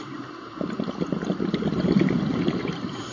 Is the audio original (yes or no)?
no